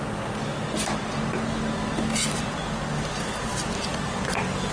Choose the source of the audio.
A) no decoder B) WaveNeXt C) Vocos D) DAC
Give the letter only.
A